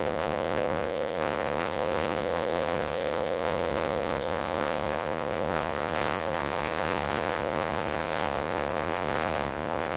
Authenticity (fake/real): fake